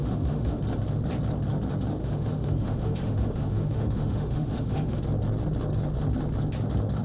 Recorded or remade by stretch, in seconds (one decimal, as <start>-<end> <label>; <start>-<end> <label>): 0.0-0.6 remade; 0.6-2.0 recorded; 2.0-5.0 remade; 5.0-7.0 recorded